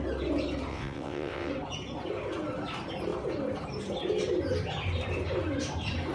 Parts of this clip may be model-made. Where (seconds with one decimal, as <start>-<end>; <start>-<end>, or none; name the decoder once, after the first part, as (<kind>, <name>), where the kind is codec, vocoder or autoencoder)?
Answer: 0.7-1.5 (vocoder, WaveNeXt)